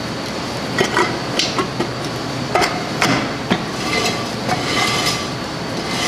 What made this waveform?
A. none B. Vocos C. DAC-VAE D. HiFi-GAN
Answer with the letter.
A